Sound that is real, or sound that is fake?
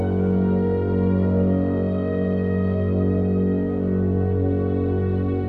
real